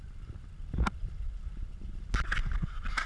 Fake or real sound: real